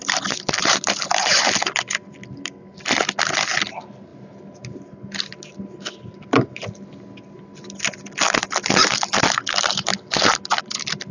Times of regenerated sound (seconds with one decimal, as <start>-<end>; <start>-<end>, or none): 0.6-2.1; 8.8-9.4